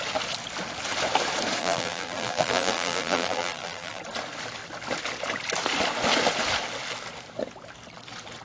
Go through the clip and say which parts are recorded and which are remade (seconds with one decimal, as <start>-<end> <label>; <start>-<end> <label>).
0.0-1.6 recorded; 1.6-4.0 remade; 4.0-8.4 recorded